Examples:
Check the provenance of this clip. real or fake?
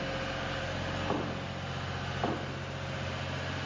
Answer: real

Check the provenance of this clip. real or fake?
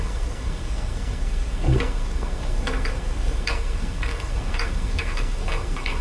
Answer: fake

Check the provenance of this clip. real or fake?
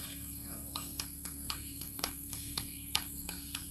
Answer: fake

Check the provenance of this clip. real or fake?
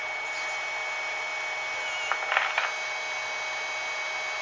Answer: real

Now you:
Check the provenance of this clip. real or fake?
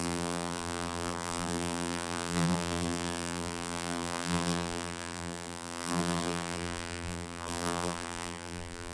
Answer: fake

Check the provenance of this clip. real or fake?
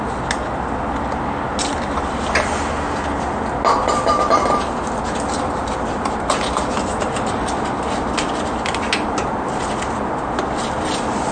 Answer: real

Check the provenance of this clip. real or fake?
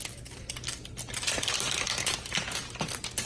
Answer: real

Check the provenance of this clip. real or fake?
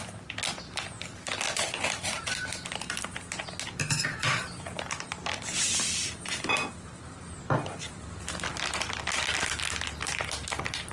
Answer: real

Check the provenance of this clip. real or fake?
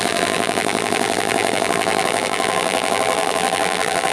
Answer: fake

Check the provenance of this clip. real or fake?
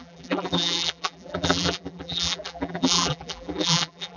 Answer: fake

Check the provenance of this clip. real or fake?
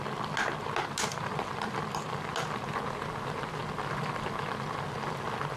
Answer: real